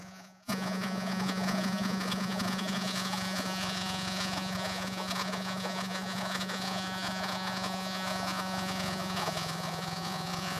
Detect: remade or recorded remade